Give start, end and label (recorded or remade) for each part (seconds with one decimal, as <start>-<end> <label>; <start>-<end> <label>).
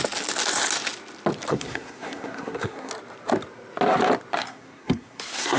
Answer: 0.0-1.5 recorded; 1.5-2.9 remade; 2.9-4.4 recorded; 4.4-5.6 remade